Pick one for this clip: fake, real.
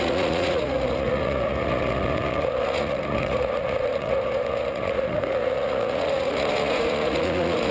fake